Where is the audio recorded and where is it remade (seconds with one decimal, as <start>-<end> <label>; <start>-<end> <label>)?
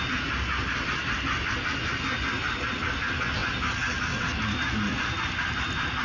0.0-6.0 recorded